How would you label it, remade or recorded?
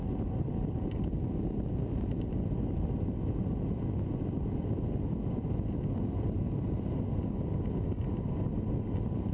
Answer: recorded